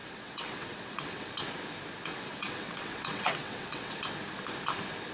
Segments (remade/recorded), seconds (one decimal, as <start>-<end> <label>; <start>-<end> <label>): 0.0-1.3 remade; 1.3-2.1 recorded; 2.1-4.0 remade; 4.0-5.1 recorded